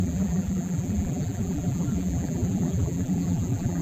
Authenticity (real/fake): fake